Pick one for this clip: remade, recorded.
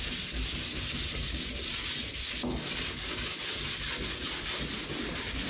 recorded